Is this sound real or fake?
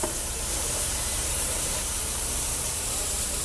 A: fake